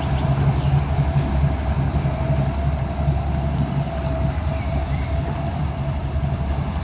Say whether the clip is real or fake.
real